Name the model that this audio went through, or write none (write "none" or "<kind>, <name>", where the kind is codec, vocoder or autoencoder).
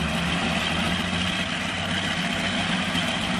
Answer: none